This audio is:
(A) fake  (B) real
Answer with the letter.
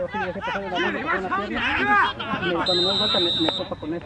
B